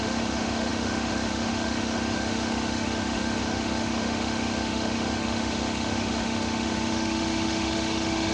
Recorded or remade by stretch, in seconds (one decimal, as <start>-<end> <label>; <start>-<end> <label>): 0.0-8.3 remade